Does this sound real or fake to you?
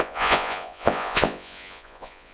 fake